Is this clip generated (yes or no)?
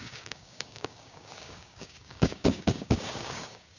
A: yes